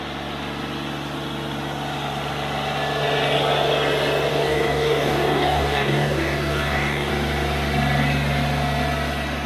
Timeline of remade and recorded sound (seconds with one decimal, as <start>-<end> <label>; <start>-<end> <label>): 0.0-4.3 recorded; 4.3-7.1 remade; 7.1-9.5 recorded